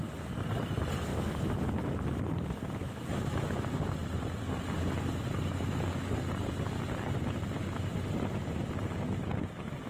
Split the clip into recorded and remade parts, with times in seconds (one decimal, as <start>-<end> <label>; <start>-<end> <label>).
0.0-2.8 recorded; 2.8-3.5 remade; 3.5-9.9 recorded